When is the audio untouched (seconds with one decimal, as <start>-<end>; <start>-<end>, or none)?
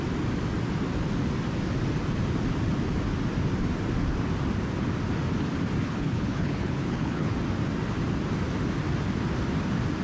0.0-5.8; 7.3-10.0